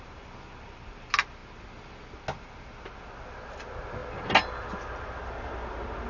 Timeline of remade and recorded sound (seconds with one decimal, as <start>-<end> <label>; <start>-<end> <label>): 0.0-6.1 recorded